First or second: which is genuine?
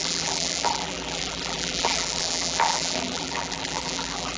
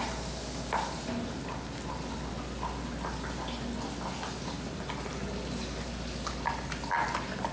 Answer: second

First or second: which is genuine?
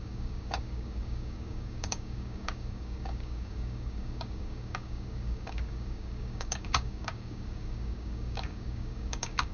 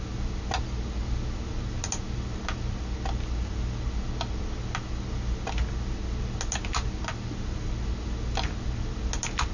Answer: second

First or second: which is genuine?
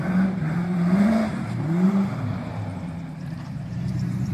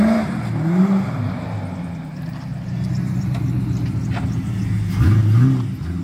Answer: second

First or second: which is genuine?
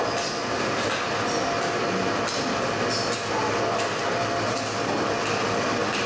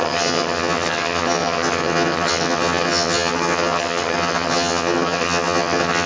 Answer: first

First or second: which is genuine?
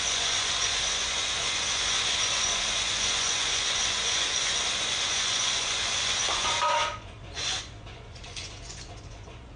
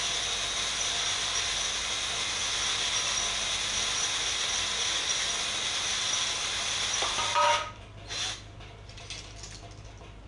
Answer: second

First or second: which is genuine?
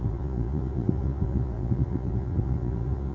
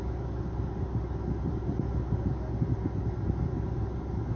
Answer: second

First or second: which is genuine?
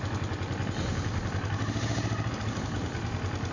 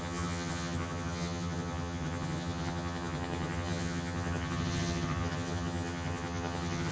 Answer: first